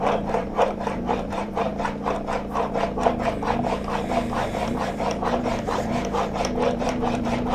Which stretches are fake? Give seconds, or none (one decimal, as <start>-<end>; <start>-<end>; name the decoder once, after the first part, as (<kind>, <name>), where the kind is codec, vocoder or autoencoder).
0.0-1.7 (vocoder, BigVGAN v2); 4.7-5.9; 6.6-7.5